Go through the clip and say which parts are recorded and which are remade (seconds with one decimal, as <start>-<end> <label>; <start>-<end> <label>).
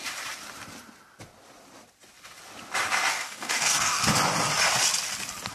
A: 0.0-3.1 recorded; 3.1-4.0 remade; 4.0-5.5 recorded